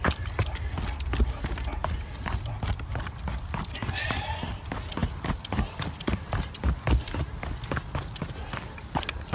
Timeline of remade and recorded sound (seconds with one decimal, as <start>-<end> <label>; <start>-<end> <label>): 0.0-9.3 recorded

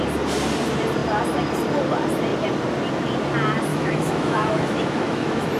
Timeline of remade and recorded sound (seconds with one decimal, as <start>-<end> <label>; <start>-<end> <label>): 0.0-3.7 recorded; 3.7-5.6 remade